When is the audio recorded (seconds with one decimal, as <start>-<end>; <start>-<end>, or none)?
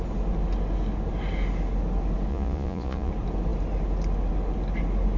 0.0-2.3; 3.1-5.2